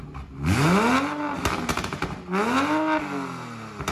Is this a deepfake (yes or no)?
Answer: no